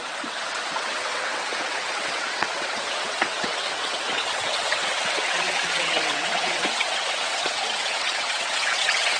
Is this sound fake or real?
fake